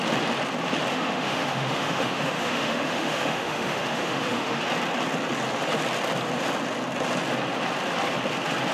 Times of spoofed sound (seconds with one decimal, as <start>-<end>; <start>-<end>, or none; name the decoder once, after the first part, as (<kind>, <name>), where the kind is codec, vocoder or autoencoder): 0.9-4.6 (autoencoder, DAC-VAE)